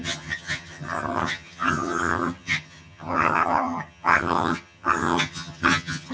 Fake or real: fake